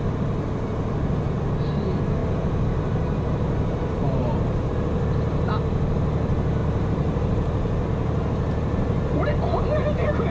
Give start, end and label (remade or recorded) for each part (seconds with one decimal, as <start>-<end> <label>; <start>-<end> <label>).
0.0-2.2 recorded; 2.2-4.7 remade; 4.7-6.6 recorded; 6.6-7.9 remade; 7.9-10.3 recorded